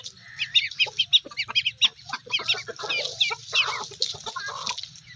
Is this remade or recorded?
recorded